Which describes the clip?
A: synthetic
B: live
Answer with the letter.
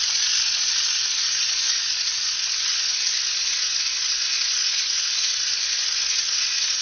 A